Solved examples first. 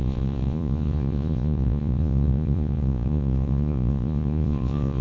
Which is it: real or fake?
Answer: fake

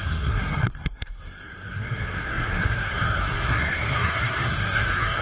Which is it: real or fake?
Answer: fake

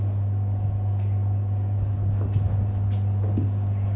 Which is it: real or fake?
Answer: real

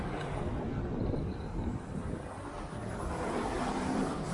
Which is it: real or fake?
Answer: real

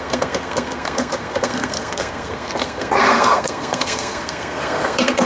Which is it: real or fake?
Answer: fake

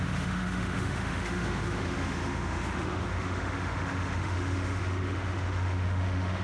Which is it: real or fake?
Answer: fake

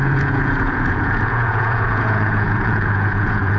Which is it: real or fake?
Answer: fake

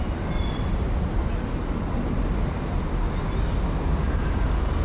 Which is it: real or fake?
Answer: real